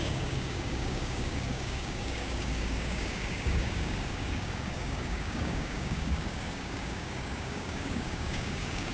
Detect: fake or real fake